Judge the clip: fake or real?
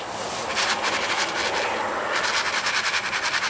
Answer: real